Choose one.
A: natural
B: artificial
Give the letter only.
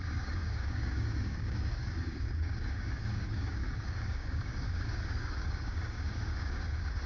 B